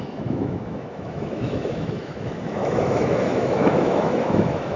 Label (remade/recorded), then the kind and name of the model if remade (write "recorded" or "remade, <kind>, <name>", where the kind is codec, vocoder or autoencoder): remade, autoencoder, DAC-VAE